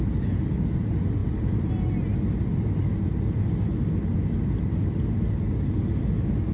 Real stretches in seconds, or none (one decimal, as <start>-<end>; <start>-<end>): 0.0-1.2; 1.7-6.5